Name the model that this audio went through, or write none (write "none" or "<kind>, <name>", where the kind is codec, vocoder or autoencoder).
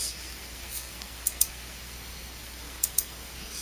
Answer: codec, SNAC